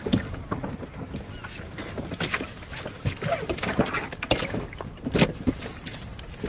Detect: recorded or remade recorded